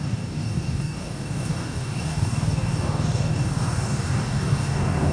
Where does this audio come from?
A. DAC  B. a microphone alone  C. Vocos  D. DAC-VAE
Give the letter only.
A